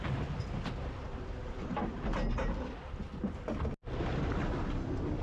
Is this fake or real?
real